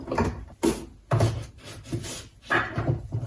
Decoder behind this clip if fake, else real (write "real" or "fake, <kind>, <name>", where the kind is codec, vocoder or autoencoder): real